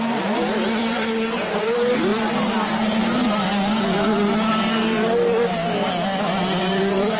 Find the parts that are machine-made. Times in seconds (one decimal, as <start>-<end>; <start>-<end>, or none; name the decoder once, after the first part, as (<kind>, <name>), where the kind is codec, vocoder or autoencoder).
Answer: 0.0-2.1 (vocoder, BigVGAN v2); 2.7-3.1; 4.5-5.6; 6.6-7.2